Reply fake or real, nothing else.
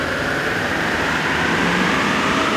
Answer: fake